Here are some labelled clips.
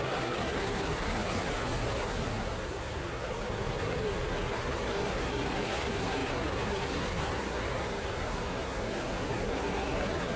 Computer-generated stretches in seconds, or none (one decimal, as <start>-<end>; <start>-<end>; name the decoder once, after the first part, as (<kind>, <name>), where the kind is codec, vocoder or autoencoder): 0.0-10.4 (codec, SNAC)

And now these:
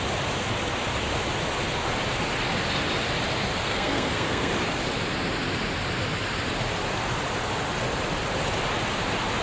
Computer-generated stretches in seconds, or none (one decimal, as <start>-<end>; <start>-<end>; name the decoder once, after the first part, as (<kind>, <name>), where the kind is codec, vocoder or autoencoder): 3.6-4.5 (codec, SNAC)

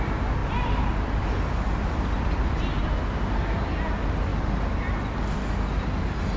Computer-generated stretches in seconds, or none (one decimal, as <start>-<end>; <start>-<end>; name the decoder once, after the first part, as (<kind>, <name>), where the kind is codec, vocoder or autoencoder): none